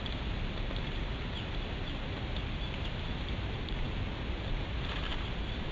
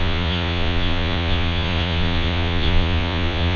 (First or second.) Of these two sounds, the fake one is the second